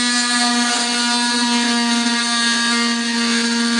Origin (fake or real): real